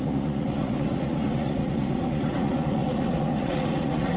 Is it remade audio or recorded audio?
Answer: remade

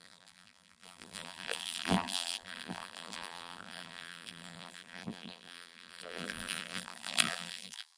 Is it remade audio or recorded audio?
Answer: remade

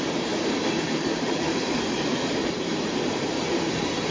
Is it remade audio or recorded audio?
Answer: remade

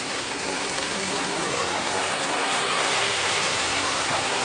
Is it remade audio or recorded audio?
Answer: remade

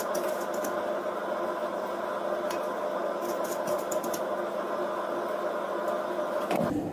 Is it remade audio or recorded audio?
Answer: recorded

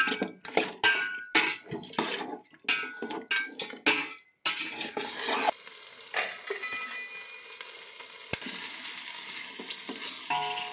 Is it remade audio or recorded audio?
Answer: recorded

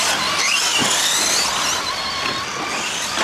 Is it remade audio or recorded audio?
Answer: recorded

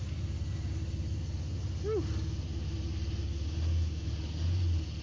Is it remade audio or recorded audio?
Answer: recorded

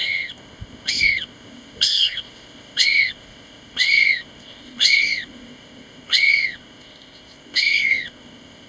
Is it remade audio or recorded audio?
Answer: remade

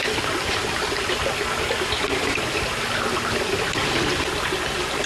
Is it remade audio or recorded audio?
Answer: recorded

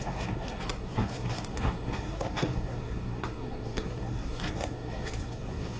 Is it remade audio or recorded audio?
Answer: remade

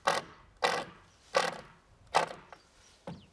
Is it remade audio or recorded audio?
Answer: recorded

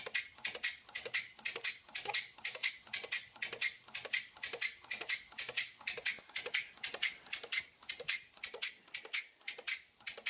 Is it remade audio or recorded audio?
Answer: recorded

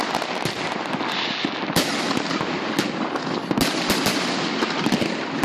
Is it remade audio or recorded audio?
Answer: recorded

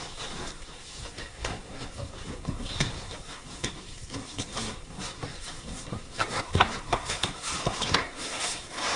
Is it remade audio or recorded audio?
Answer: remade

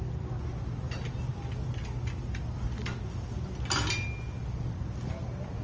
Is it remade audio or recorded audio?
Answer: recorded